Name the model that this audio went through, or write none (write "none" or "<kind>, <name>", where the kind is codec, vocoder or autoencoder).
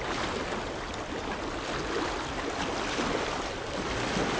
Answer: none